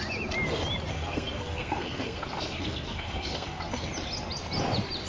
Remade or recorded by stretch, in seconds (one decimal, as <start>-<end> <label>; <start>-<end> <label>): 0.0-0.9 recorded; 0.9-3.9 remade; 3.9-5.1 recorded